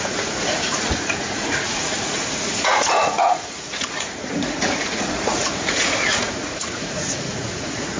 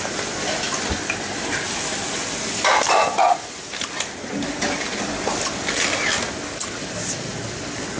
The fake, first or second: first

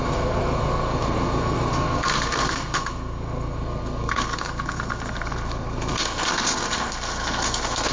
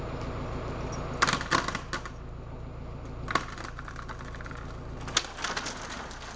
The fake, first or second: first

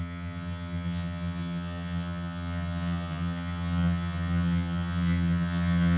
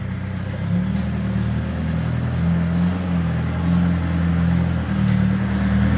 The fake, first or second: first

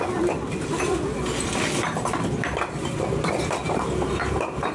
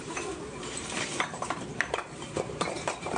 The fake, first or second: second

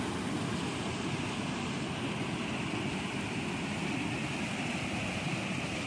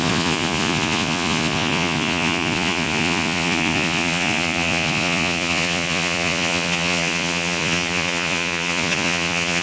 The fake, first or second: second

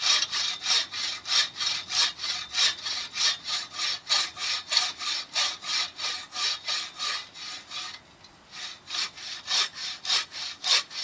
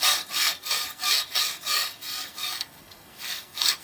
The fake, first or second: second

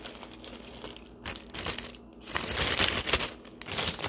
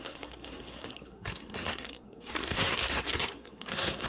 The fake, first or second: second